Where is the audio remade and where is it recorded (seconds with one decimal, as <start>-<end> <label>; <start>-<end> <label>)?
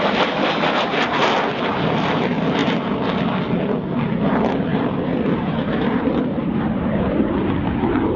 0.0-4.7 recorded; 4.7-7.2 remade; 7.2-8.2 recorded